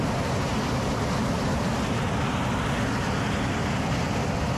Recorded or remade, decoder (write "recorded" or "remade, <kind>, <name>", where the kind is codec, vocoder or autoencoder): recorded